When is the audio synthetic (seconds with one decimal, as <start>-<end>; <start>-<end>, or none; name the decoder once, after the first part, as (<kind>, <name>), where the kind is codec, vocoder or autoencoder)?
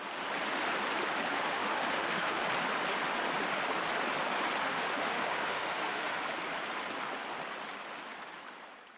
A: 1.3-2.4 (autoencoder, DAC-VAE); 4.6-6.2